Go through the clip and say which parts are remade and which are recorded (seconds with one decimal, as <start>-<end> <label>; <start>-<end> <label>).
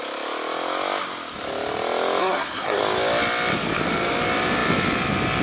0.0-2.2 recorded; 2.2-2.8 remade; 2.8-5.4 recorded